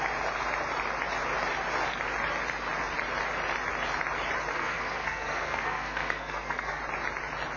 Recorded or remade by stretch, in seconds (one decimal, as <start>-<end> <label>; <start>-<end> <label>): 0.0-4.5 recorded; 4.5-6.8 remade; 6.8-7.6 recorded